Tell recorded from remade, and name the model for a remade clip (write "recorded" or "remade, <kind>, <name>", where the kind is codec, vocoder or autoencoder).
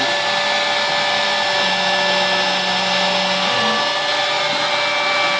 recorded